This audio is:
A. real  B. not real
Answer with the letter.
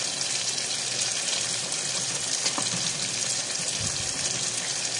A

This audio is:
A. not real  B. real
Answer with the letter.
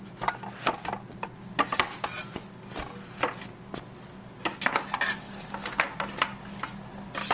B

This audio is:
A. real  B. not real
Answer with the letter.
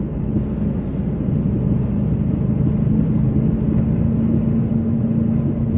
A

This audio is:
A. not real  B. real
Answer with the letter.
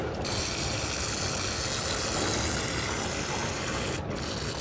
B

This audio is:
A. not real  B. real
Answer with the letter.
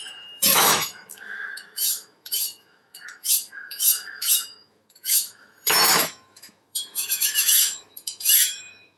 A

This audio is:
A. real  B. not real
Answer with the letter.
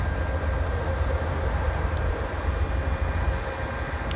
A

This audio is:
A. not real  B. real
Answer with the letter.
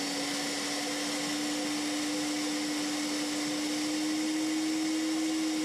B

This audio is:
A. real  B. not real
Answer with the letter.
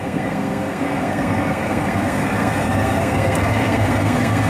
B